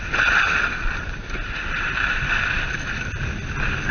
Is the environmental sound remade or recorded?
recorded